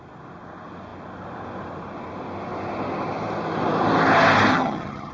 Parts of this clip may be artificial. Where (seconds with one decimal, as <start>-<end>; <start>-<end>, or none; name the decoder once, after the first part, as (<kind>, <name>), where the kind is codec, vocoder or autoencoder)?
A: 4.5-5.1 (vocoder, HiFi-GAN)